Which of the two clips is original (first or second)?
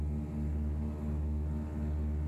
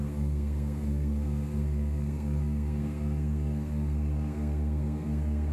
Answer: first